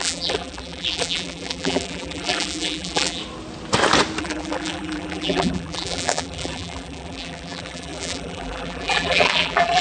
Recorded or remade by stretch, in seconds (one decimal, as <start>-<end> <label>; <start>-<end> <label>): 0.0-3.2 remade; 3.2-4.2 recorded; 4.2-9.8 remade